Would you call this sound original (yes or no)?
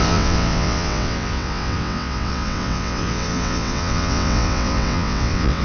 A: no